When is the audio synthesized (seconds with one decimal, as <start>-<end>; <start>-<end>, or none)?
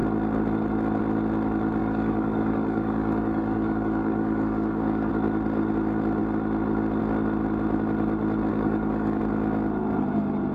1.8-5.1; 8.5-9.2